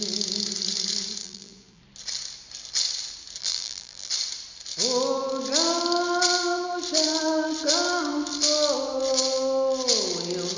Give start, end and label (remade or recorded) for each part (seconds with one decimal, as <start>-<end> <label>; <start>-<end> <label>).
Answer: 0.0-1.2 recorded; 1.2-1.8 remade; 1.8-3.4 recorded; 3.4-4.1 remade; 4.1-10.6 recorded